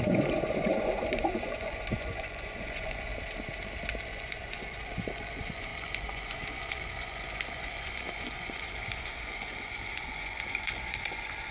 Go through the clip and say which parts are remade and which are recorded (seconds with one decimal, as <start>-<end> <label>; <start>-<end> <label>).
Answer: 0.0-3.1 remade; 3.1-4.1 recorded; 4.1-11.5 remade